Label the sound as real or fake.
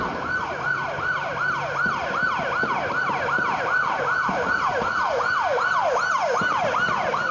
real